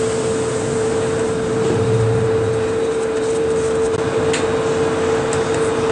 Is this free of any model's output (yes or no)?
yes